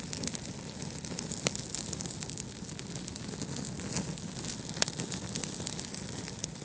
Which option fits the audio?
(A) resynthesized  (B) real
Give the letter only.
B